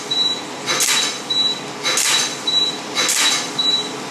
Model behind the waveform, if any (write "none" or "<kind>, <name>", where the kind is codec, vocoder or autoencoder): none